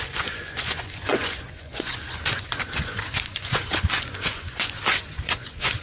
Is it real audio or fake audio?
fake